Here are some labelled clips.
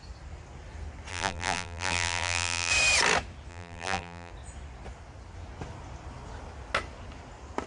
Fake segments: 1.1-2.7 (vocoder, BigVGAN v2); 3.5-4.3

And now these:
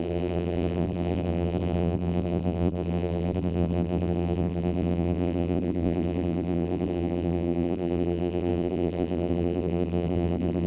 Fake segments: 0.0-10.7 (vocoder, BigVGAN v2)

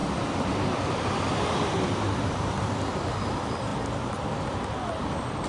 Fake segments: 0.0-3.3 (vocoder, BigVGAN v2)

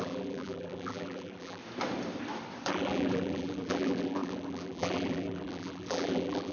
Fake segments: 0.0-1.6 (vocoder, BigVGAN v2); 2.7-6.5